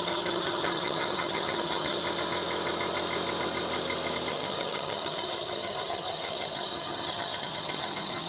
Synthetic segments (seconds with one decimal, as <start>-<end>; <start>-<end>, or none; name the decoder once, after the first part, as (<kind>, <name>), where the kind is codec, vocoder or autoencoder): 0.0-2.0 (vocoder, HiFi-GAN); 4.3-8.3